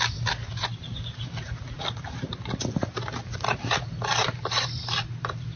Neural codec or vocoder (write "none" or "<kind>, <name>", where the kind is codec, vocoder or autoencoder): none